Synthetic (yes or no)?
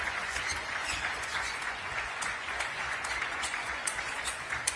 yes